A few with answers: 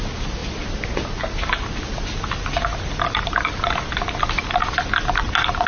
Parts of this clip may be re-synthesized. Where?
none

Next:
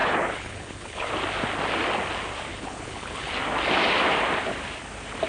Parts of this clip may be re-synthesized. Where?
0.0-1.1 (codec, HILCodec); 2.5-3.3

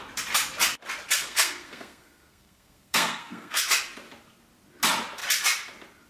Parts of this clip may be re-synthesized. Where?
1.2-3.6 (codec, SNAC)

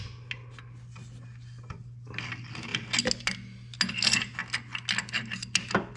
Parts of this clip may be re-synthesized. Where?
none

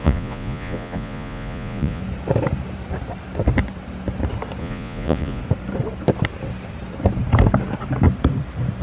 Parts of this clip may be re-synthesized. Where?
0.0-2.0 (vocoder, Vocos); 4.6-5.4